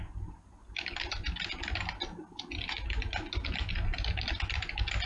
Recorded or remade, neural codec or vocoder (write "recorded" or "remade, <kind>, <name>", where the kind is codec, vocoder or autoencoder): recorded